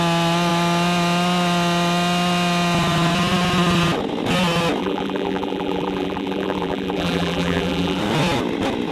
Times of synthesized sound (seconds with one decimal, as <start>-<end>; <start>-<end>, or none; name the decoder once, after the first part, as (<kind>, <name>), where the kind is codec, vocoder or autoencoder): 4.8-8.0 (vocoder, BigVGAN v2)